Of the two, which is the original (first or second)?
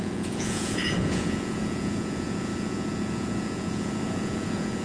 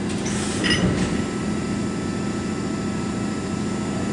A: second